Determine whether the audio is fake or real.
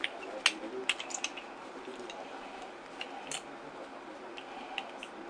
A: real